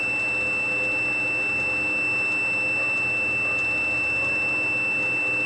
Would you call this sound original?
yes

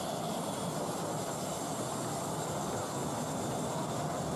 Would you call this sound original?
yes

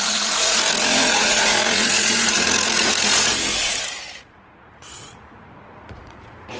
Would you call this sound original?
no